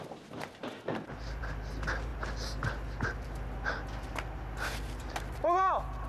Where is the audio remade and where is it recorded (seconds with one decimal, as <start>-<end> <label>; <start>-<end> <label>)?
0.0-6.1 recorded